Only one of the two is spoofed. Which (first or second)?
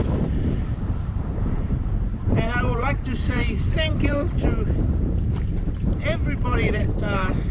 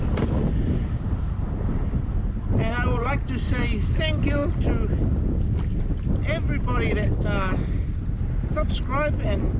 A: first